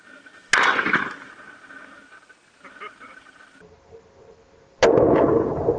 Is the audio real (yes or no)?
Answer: yes